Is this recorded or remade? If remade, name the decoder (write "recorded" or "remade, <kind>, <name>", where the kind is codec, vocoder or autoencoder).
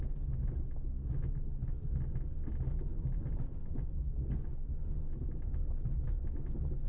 recorded